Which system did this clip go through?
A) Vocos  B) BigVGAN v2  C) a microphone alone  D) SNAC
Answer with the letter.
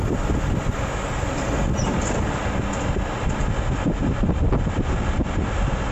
C